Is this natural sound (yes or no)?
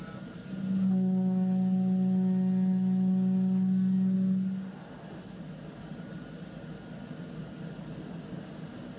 yes